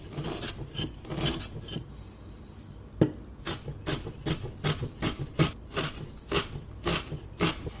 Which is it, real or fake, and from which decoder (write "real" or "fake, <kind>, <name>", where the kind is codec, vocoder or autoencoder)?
real